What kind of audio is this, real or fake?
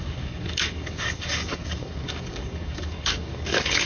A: fake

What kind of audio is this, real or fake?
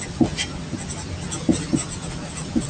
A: real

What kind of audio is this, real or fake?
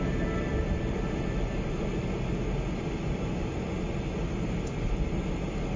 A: real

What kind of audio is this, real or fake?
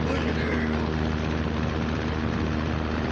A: real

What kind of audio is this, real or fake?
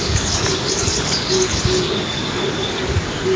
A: fake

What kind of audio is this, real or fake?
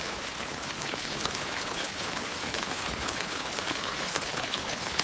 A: fake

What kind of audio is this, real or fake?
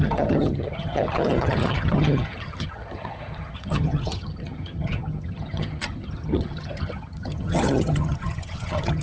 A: fake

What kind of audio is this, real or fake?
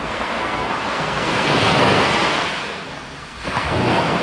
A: fake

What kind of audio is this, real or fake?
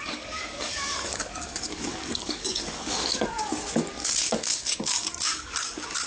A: fake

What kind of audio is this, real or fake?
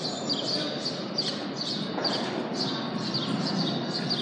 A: real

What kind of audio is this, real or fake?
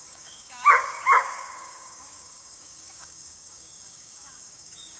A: fake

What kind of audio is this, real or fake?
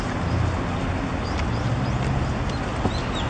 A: real